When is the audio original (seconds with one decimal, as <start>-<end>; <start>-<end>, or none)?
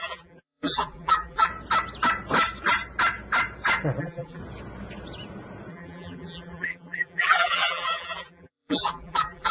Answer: 1.5-4.0; 4.4-5.7